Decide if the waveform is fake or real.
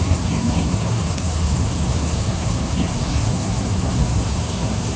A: fake